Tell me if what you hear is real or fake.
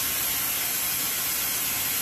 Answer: real